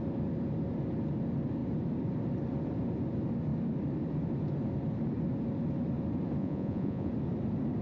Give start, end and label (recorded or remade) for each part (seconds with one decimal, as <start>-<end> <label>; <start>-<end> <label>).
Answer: 0.0-6.4 recorded; 6.4-7.1 remade; 7.1-7.8 recorded